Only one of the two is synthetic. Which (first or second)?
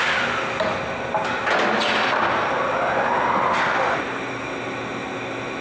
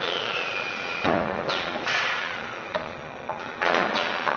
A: second